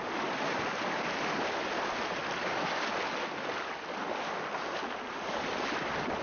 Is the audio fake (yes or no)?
no